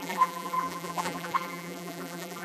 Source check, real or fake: fake